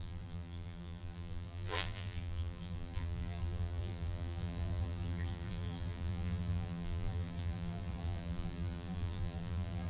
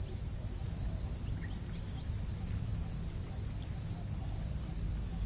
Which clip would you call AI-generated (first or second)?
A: first